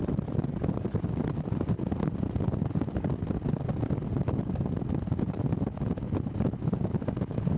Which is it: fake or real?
real